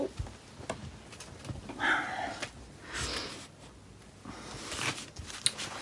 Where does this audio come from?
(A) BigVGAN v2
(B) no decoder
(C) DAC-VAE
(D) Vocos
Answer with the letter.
B